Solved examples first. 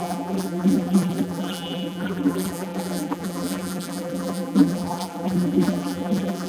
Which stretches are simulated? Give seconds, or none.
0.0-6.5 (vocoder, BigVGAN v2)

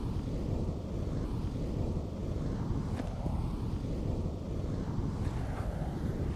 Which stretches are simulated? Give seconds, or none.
2.2-6.0 (vocoder, BigVGAN v2)

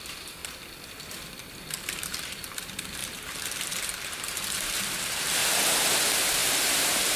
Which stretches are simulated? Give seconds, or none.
0.0-0.4 (vocoder, BigVGAN v2); 1.3-5.4; 6.0-7.2

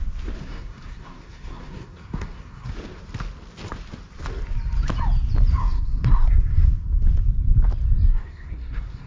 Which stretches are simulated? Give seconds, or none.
0.4-2.7 (codec, SNAC); 5.6-6.7; 8.1-9.1

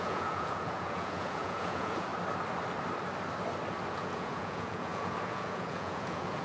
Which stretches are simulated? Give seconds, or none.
0.0-2.1 (vocoder, Vocos); 3.9-6.4

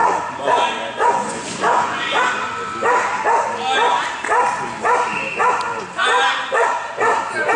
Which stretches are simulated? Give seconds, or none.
0.0-2.2 (vocoder, Vocos)

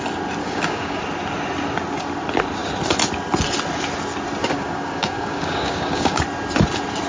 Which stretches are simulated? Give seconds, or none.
0.4-1.0 (codec, DAC); 4.4-6.2